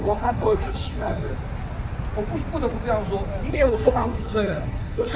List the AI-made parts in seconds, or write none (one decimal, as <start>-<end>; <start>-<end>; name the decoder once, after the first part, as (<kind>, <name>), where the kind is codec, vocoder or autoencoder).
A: 0.0-1.3 (codec, SNAC); 3.5-5.2